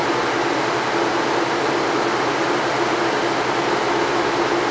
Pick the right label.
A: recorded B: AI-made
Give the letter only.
A